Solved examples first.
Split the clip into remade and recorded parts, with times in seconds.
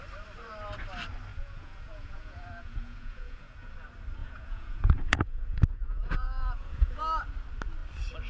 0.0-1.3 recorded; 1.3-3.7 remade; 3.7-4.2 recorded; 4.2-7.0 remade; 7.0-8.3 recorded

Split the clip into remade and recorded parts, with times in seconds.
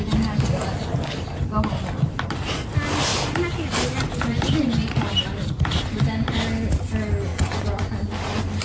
0.0-7.3 recorded; 7.3-8.0 remade; 8.0-8.6 recorded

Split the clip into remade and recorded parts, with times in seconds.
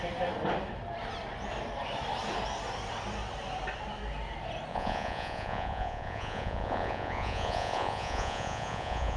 0.0-4.7 recorded; 4.7-9.2 remade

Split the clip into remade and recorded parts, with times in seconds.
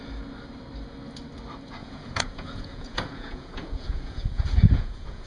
0.0-1.8 recorded; 1.8-5.3 remade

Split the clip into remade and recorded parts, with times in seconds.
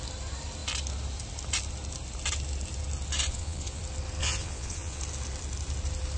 0.0-3.3 recorded; 3.3-3.8 remade; 3.8-4.2 recorded; 4.2-5.0 remade; 5.0-6.2 recorded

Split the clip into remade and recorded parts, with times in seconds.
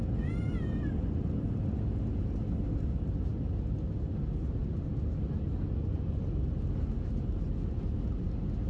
0.0-8.7 recorded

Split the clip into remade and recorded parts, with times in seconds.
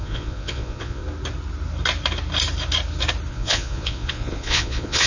0.0-1.0 remade; 1.0-3.3 recorded; 3.3-5.1 remade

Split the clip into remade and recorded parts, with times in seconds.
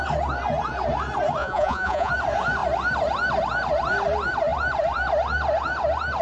0.0-1.4 recorded; 1.4-2.1 remade; 2.1-6.2 recorded